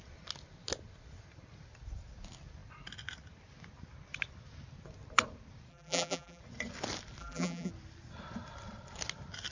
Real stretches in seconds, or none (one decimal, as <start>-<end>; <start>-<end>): 0.0-5.7; 6.4-7.2; 7.7-9.5